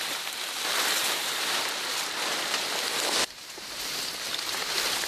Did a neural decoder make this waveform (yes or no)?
no